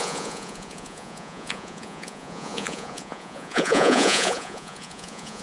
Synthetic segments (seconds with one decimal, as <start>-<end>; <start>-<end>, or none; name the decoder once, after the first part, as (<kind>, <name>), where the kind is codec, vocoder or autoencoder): 0.0-5.4 (vocoder, Vocos)

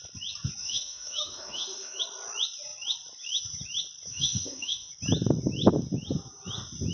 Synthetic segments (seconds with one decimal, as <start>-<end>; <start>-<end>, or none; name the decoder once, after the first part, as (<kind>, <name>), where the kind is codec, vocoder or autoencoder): 0.6-2.0 (autoencoder, DAC-VAE); 4.1-4.9